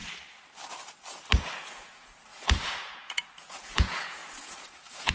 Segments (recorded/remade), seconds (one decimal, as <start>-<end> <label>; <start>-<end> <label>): 0.0-1.5 recorded; 1.5-5.1 remade

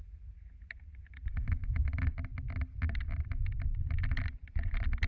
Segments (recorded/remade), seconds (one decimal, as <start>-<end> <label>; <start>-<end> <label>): 0.0-5.1 recorded

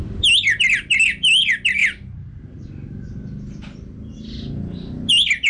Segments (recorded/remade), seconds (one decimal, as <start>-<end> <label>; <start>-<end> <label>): 0.0-5.5 recorded

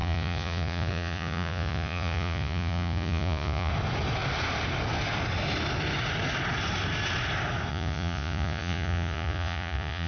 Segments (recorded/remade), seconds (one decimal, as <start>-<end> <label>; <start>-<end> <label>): 0.0-3.7 remade; 3.7-7.7 recorded; 7.7-10.1 remade

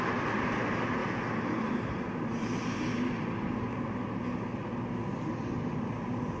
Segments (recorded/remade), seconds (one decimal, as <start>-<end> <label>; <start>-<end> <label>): 0.0-6.4 recorded

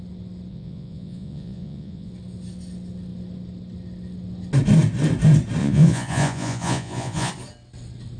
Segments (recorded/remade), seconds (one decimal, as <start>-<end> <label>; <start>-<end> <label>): 0.0-0.5 recorded; 0.5-2.1 remade; 2.1-5.6 recorded; 5.6-7.3 remade; 7.3-8.2 recorded

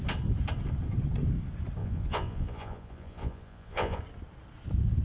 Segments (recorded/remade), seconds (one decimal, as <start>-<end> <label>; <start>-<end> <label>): 0.0-1.8 recorded; 1.8-4.0 remade; 4.0-5.0 recorded